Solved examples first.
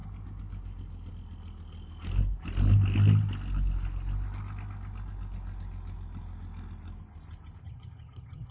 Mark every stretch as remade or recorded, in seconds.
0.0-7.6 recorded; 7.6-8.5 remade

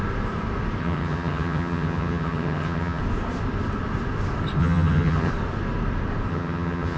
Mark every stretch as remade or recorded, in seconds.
0.0-0.8 recorded; 0.8-3.0 remade; 3.0-4.6 recorded; 4.6-5.3 remade; 5.3-6.3 recorded; 6.3-7.0 remade